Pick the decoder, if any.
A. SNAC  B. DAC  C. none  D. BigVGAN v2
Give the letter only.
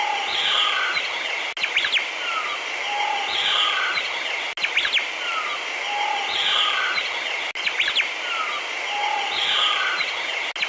C